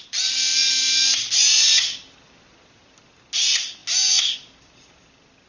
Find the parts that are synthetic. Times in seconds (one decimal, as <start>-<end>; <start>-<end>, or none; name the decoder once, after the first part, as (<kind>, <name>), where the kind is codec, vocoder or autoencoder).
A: none